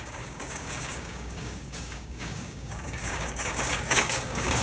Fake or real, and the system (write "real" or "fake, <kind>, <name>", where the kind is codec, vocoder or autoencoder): fake, codec, DAC